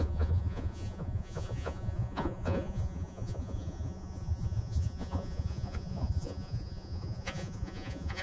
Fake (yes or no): yes